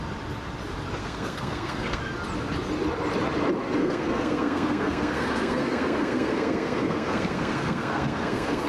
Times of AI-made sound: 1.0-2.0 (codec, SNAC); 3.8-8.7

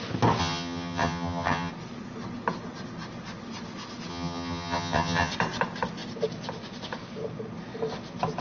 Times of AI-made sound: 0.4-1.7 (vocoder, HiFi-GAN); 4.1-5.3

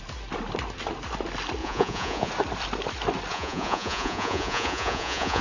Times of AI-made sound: 1.6-2.3 (vocoder, Vocos); 3.3-5.4